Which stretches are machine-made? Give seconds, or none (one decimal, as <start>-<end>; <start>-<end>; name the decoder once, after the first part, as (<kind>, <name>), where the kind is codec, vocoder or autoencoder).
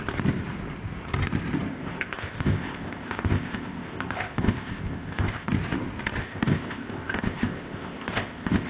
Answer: 1.7-5.5 (codec, ZipCodec); 6.2-8.7